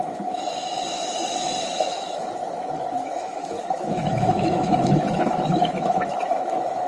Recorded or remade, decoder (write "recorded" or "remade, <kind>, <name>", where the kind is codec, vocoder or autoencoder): remade, autoencoder, DAC-VAE